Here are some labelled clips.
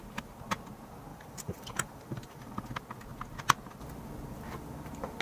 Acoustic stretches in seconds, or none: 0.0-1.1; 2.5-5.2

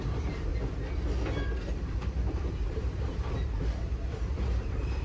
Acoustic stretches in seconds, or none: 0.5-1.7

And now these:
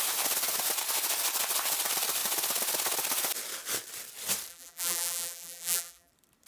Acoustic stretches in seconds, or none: 0.0-4.5; 6.1-6.5